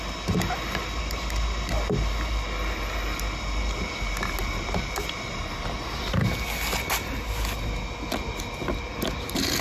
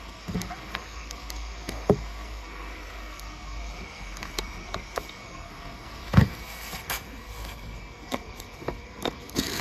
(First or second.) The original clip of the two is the first